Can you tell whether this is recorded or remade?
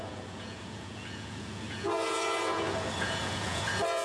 remade